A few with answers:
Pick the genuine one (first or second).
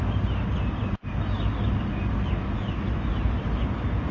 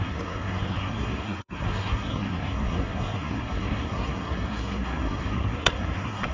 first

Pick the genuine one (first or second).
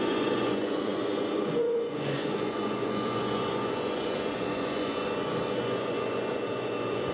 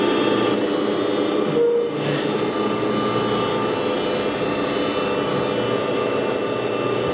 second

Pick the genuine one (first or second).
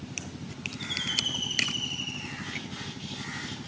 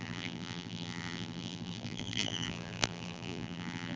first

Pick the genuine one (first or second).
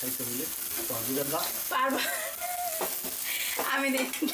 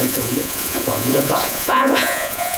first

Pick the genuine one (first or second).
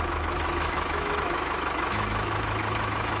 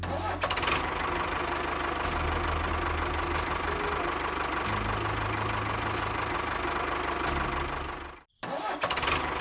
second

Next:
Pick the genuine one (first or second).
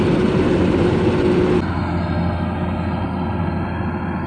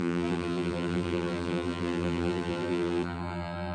first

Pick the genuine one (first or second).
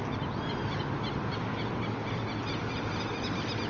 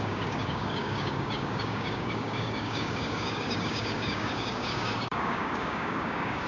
first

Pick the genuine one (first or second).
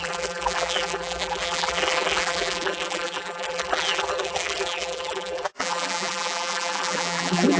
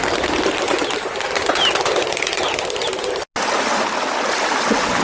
second